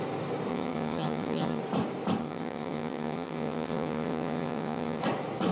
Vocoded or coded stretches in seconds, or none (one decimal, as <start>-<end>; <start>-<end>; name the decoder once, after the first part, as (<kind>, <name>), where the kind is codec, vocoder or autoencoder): 0.5-1.6 (vocoder, HiFi-GAN); 2.2-5.0